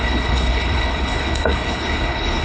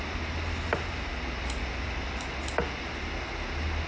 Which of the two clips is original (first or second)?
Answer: second